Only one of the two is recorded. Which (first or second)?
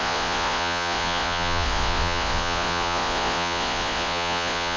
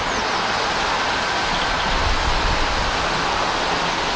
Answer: second